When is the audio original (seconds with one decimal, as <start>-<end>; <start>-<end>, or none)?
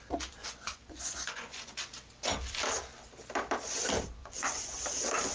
0.0-0.4; 1.9-4.2; 4.8-5.3